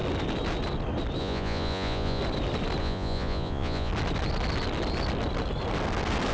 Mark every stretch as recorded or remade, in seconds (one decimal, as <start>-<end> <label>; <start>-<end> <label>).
0.0-1.2 recorded; 1.2-2.2 remade; 2.2-2.8 recorded; 2.8-3.9 remade; 3.9-6.3 recorded